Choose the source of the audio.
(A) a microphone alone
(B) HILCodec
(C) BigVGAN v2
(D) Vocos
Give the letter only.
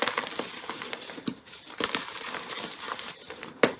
C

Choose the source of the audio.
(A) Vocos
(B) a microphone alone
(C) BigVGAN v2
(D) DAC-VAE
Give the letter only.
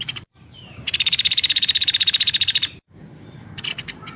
C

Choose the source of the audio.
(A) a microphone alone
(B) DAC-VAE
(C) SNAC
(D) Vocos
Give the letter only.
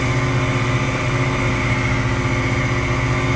A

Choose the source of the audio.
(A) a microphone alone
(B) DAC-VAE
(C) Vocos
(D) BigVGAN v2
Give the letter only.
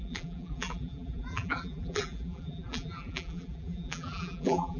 D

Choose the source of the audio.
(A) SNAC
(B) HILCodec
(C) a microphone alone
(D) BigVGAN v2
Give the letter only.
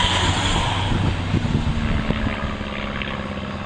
C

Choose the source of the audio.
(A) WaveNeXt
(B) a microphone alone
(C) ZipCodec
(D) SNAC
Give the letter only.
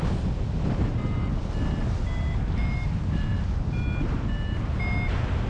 B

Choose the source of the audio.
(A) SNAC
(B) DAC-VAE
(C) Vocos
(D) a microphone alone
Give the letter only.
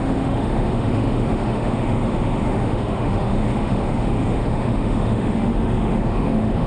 B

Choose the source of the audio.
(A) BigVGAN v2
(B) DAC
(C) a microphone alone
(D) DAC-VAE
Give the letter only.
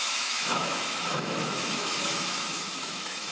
D